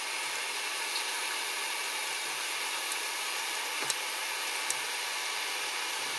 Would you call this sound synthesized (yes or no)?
no